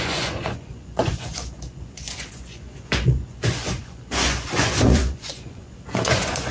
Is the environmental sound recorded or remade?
remade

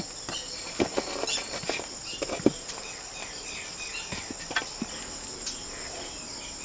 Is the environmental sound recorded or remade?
recorded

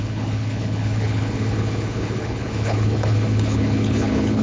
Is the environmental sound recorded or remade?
remade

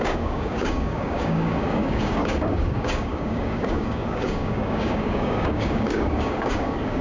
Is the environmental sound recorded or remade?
remade